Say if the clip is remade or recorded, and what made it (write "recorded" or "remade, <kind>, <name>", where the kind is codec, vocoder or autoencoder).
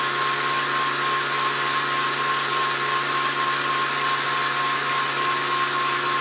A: recorded